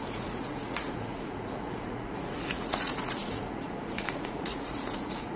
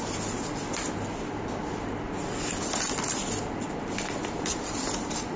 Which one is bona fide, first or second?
second